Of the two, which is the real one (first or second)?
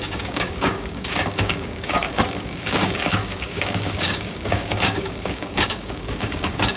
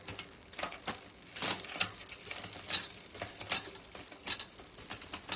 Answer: second